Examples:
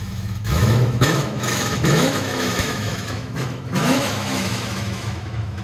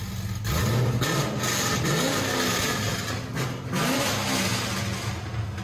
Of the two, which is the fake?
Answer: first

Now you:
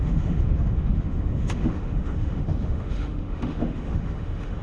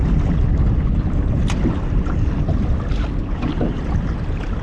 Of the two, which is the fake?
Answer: first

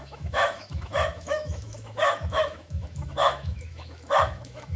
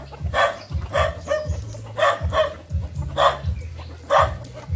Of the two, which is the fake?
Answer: first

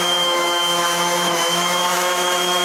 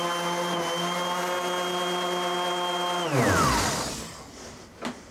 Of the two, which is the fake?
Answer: first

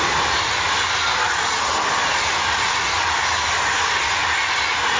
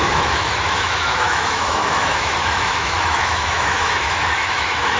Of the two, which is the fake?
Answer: second